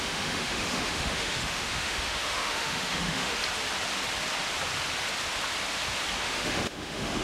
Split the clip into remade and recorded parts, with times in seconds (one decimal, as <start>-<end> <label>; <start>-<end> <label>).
0.0-3.4 remade; 3.4-6.2 recorded; 6.2-7.2 remade